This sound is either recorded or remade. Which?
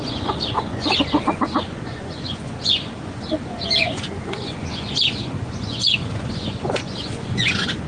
remade